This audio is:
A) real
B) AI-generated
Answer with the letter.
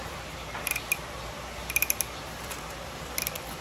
B